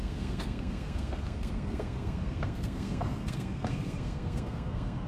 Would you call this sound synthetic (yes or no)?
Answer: yes